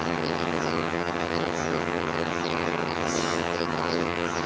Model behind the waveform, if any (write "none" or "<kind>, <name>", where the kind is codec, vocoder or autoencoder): vocoder, HiFi-GAN